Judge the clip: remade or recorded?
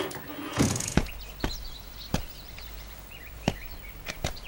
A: remade